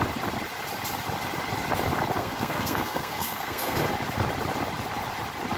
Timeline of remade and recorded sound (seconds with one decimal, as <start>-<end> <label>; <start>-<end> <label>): 0.0-2.2 recorded; 2.2-3.9 remade; 3.9-5.6 recorded